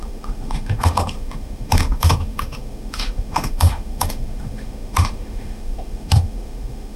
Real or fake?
fake